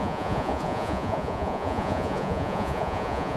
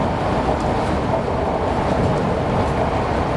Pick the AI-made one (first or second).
first